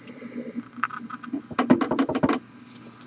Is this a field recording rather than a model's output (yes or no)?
yes